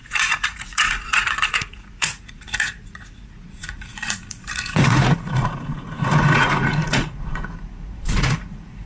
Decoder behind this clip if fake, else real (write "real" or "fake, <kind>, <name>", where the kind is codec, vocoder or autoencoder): fake, vocoder, Vocos